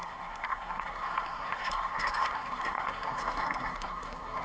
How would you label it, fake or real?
fake